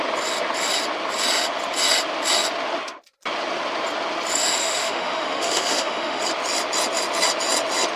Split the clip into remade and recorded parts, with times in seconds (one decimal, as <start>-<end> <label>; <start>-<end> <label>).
0.0-4.6 recorded; 4.6-6.2 remade; 6.2-8.0 recorded